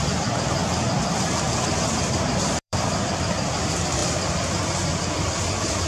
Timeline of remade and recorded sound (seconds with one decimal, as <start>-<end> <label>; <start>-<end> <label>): 0.0-0.6 remade; 0.6-2.4 recorded; 2.4-5.9 remade